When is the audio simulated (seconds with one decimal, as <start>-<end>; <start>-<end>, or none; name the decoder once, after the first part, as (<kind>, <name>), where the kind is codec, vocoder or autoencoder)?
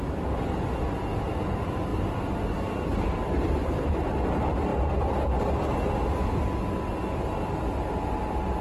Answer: none